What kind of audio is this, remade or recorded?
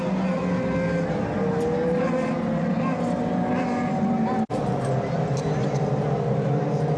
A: recorded